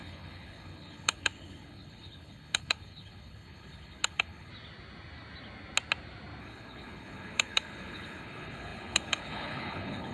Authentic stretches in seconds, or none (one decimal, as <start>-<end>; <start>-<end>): 4.5-6.4